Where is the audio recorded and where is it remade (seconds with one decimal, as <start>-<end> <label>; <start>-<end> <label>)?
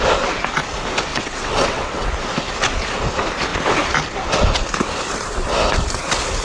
0.0-1.1 recorded; 1.1-2.1 remade; 2.1-6.4 recorded